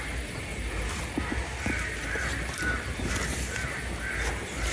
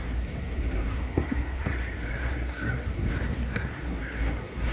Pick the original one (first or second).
first